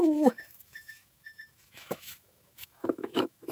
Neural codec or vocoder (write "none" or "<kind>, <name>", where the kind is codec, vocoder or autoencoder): autoencoder, DAC-VAE